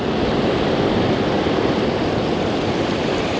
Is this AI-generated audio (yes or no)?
no